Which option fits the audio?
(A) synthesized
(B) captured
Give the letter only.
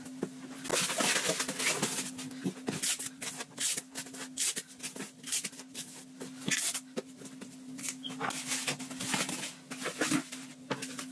B